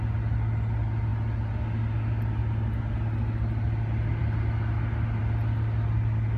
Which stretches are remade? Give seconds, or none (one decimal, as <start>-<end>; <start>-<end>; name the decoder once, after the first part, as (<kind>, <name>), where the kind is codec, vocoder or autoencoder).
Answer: none